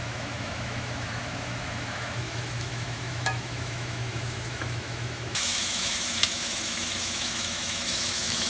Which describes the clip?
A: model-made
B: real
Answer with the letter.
A